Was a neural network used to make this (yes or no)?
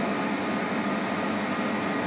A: no